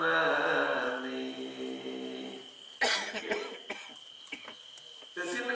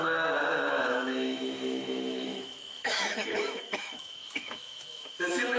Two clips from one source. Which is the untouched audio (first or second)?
first